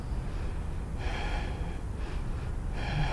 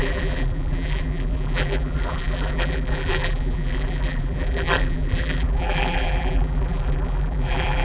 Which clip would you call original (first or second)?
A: first